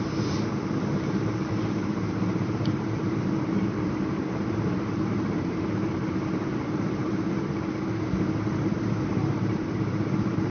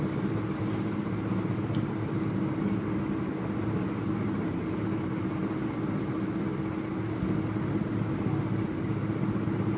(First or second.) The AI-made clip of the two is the first